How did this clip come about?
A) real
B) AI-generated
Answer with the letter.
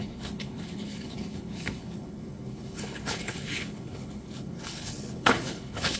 B